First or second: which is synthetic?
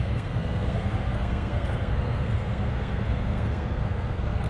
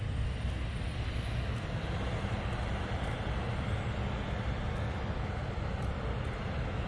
first